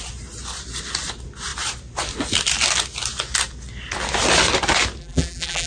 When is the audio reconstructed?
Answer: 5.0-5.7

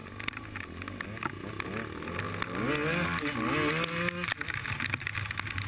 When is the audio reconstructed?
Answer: none

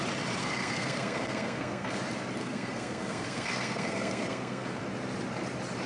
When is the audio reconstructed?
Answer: 0.4-2.0; 2.4-4.8

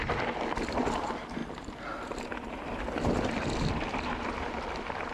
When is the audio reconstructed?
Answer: 0.0-5.1

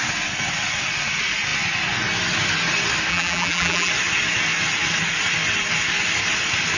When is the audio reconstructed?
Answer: 3.1-3.9